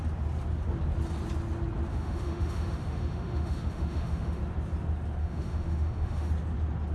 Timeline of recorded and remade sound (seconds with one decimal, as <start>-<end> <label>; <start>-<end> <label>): 0.0-1.9 recorded; 1.9-4.4 remade; 4.4-5.2 recorded; 5.2-6.3 remade; 6.3-6.9 recorded